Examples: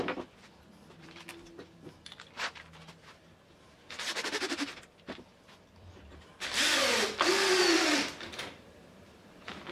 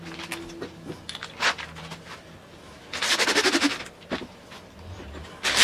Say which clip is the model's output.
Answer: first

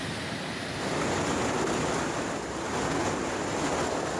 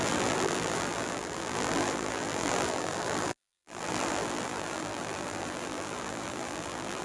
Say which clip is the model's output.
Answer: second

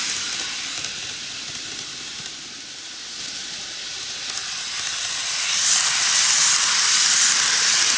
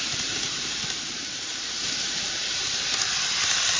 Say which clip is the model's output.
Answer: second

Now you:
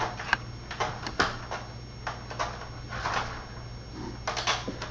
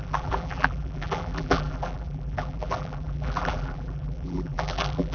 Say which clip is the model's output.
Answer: second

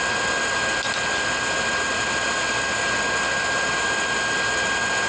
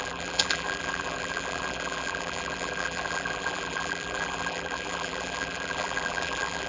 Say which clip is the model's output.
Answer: second